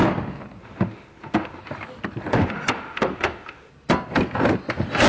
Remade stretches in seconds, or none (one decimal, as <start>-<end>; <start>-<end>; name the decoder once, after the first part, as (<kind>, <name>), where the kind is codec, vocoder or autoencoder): 0.6-1.6 (autoencoder, DAC-VAE); 2.3-3.7